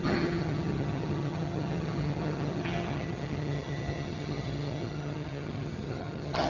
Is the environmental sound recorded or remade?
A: remade